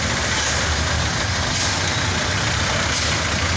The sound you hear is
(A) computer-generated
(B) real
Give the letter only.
B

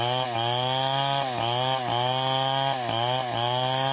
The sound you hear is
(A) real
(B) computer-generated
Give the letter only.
A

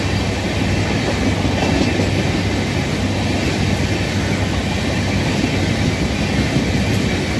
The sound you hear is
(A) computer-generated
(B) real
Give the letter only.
B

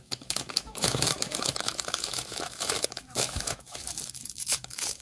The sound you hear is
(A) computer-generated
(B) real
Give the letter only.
A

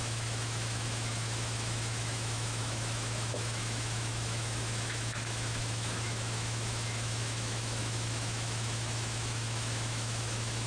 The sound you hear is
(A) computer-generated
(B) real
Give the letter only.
A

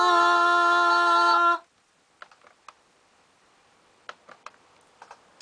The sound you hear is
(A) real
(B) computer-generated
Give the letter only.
A